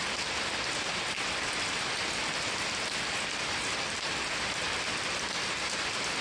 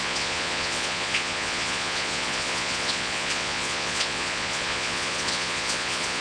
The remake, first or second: second